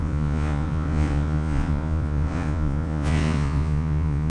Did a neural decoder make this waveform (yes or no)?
yes